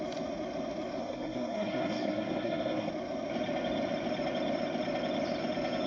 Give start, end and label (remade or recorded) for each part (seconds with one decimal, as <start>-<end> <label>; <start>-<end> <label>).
0.0-1.0 recorded; 1.0-2.9 remade; 2.9-5.9 recorded